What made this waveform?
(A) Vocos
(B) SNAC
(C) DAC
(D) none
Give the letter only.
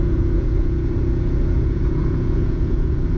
A